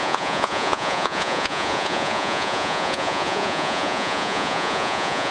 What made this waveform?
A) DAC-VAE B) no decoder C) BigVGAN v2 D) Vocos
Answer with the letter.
D